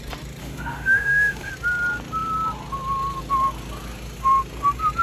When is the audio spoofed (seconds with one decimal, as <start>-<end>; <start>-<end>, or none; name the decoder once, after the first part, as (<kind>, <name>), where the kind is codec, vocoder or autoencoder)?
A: 0.4-1.5 (autoencoder, DAC-VAE)